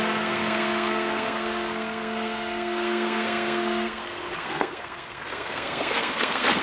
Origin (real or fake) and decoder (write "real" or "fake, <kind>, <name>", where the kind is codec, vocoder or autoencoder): fake, codec, SNAC